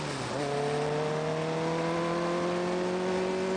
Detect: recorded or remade recorded